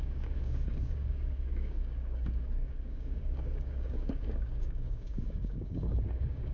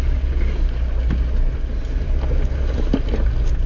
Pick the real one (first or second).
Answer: second